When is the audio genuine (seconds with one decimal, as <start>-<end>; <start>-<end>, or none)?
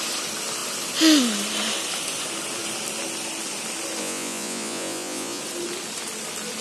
0.0-4.0; 5.4-6.6